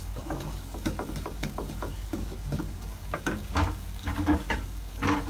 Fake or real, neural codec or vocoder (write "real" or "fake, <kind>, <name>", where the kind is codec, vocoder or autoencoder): fake, codec, DAC